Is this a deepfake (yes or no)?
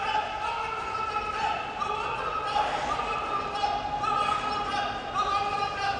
no